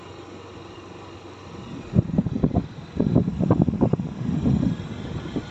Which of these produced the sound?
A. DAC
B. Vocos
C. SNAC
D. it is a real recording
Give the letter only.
D